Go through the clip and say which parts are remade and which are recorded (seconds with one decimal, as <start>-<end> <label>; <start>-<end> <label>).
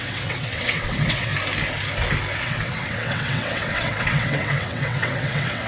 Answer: 0.0-1.3 remade; 1.3-2.4 recorded; 2.4-5.7 remade